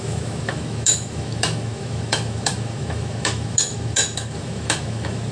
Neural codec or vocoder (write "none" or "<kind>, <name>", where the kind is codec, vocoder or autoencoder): autoencoder, DAC-VAE